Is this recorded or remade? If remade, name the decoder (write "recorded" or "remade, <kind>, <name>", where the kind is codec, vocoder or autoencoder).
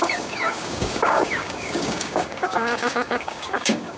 remade, codec, DAC